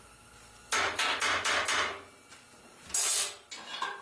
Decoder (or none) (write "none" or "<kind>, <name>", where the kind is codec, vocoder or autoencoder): none